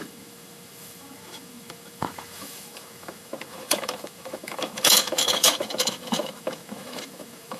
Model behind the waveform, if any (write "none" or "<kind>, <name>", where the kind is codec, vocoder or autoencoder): autoencoder, DAC-VAE